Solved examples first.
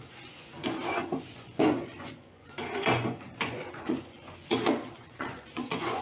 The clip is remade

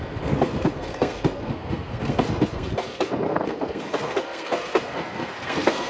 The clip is remade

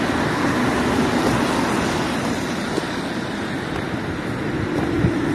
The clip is recorded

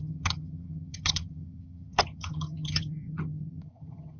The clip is remade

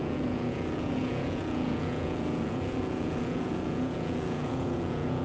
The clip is remade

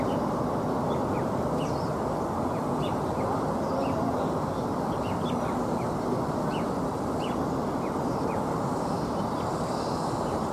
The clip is recorded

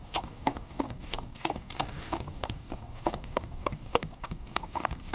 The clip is remade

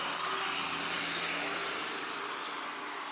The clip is recorded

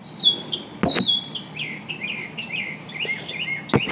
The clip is recorded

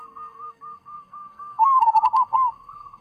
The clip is remade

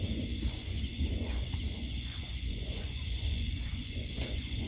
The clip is remade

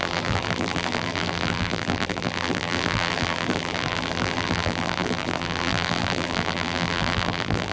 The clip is remade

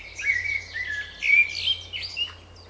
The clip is recorded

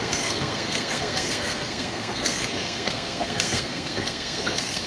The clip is remade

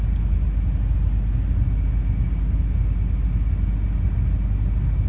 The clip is recorded